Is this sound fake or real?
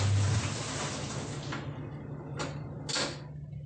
real